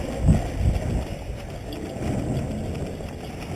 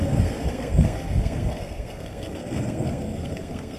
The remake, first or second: second